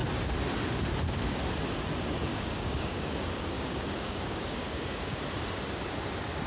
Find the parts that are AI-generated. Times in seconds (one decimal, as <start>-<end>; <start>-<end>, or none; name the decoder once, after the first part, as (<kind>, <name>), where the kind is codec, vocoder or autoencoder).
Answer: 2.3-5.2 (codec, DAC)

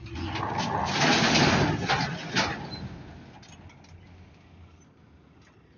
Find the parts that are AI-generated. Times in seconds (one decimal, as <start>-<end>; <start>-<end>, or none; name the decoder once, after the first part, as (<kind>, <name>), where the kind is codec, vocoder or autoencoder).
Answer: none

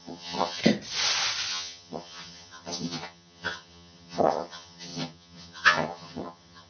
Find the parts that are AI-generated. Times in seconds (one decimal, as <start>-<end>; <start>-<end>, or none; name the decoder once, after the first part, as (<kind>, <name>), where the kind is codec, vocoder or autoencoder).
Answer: 0.0-0.6 (vocoder, HiFi-GAN); 1.5-6.7

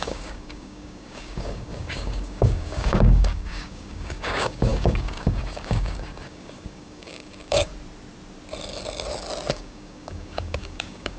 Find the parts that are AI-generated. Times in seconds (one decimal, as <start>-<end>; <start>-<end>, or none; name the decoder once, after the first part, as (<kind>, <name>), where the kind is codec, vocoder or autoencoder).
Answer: 0.0-7.7 (codec, DAC); 9.5-11.2

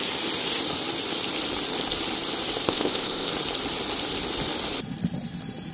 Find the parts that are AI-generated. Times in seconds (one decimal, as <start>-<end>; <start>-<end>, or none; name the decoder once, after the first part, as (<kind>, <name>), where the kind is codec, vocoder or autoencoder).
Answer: 2.7-3.3 (codec, ZipCodec)